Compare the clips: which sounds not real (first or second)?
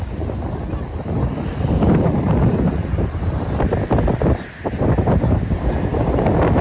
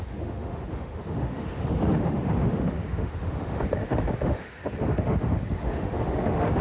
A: second